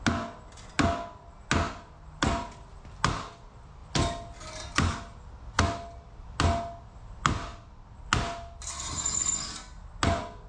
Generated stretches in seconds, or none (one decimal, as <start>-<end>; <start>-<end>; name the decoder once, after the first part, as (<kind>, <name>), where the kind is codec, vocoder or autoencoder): none